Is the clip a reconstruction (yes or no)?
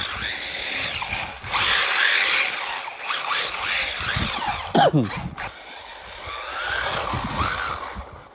no